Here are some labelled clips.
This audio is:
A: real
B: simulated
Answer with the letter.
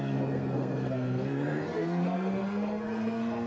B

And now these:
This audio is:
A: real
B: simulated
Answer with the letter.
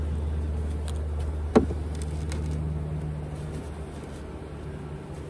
A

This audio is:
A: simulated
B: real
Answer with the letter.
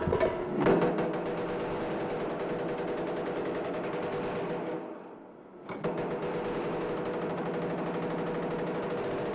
B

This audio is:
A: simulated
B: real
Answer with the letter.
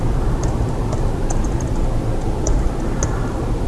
B